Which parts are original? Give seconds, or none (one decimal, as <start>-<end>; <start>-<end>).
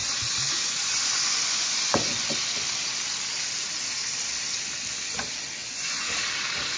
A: 3.0-5.6; 6.1-6.8